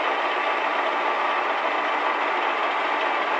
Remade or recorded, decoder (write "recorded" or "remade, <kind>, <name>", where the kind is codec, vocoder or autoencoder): recorded